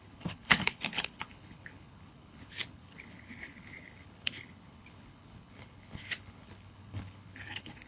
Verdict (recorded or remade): remade